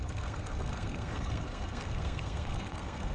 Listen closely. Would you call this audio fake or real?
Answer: fake